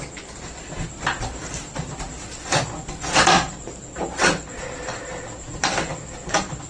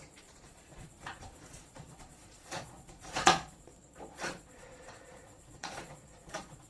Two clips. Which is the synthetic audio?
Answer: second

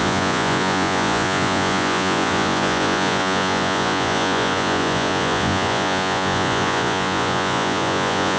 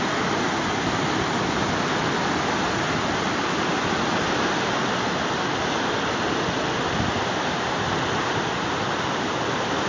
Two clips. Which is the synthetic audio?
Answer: first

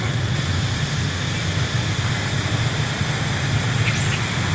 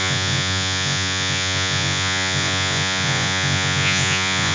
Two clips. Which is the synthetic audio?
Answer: second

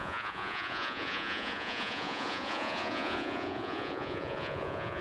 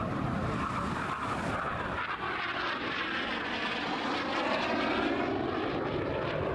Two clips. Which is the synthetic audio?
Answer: first